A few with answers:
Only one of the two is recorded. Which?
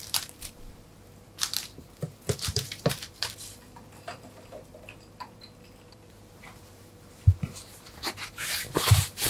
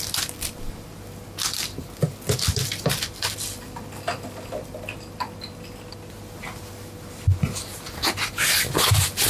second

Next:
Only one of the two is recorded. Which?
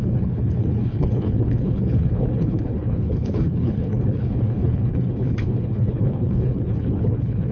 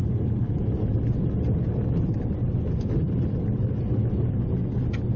second